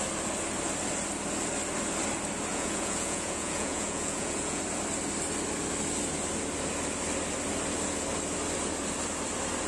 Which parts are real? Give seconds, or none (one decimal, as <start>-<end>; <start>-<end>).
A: 0.0-2.5; 4.6-9.7

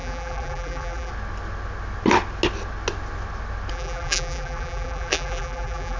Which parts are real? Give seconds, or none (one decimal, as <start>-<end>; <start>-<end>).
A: 1.1-3.7

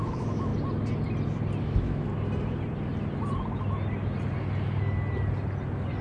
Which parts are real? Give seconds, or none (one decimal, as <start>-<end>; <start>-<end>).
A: 0.5-1.6; 2.1-6.0